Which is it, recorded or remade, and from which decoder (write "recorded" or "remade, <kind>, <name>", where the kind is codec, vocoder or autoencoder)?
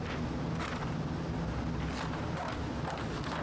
recorded